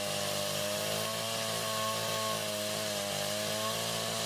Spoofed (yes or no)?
no